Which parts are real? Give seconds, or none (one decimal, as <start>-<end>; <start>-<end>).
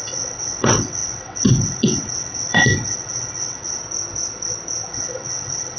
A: 3.8-4.9